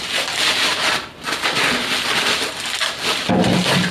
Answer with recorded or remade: recorded